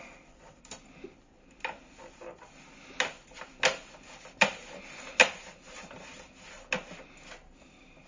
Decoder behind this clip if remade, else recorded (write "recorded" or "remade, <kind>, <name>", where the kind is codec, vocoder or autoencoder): recorded